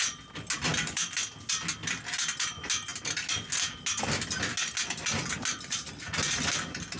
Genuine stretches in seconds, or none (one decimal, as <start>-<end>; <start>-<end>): 0.0-7.0